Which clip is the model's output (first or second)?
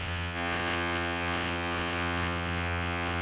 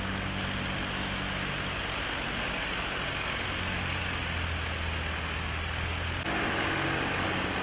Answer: first